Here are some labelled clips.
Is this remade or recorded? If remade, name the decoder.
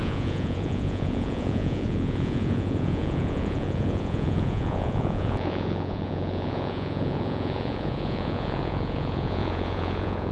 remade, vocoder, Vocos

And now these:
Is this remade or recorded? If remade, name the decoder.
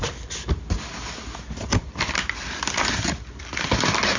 recorded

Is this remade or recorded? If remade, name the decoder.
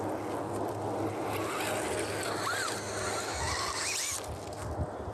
recorded